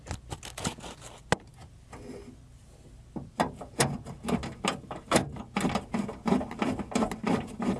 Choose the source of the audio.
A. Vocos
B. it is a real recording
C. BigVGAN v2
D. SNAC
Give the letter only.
B